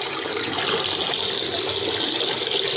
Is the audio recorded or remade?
recorded